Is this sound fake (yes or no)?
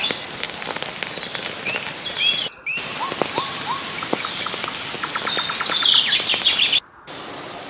no